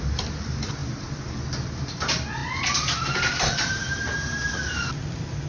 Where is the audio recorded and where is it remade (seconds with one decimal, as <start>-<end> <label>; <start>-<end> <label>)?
0.0-2.4 remade; 2.4-3.0 recorded; 3.0-5.5 remade